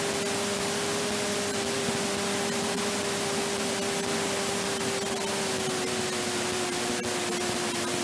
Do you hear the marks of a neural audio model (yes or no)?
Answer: no